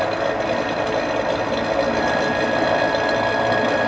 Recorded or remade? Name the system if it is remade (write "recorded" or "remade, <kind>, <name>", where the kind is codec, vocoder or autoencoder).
recorded